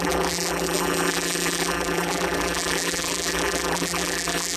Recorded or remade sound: remade